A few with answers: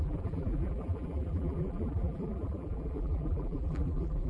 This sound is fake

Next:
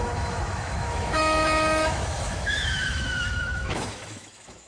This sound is fake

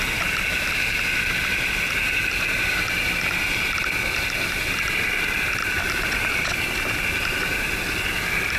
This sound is real